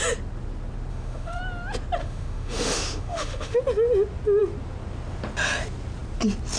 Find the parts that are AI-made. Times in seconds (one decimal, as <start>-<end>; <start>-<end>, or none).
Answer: 0.9-1.4; 2.0-3.6